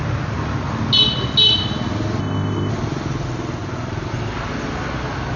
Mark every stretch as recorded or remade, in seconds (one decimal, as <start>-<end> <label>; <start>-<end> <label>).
0.0-2.2 recorded; 2.2-2.7 remade; 2.7-5.4 recorded